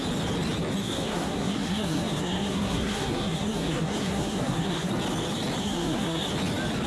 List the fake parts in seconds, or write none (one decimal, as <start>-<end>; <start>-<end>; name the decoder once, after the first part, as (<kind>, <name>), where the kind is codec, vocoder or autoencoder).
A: 0.8-4.9 (codec, SNAC); 5.6-6.3